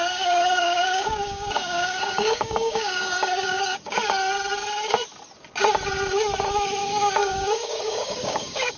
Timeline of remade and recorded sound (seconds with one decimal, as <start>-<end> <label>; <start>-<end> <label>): 0.0-4.1 remade; 4.1-6.8 recorded; 6.8-8.8 remade